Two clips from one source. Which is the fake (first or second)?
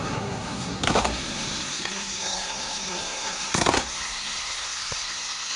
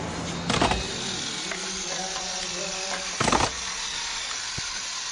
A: first